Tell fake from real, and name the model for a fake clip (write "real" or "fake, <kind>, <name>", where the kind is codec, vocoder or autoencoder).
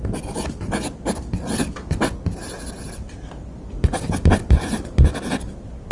real